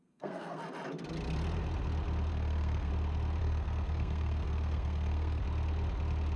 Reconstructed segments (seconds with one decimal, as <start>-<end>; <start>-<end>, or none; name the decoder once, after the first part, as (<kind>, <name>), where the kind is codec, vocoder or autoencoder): 0.0-0.6 (codec, SNAC); 2.3-2.9; 3.4-5.4